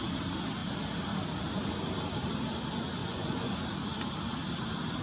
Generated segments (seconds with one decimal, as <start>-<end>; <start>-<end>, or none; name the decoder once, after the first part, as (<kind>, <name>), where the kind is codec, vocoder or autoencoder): 3.0-3.5 (vocoder, Vocos)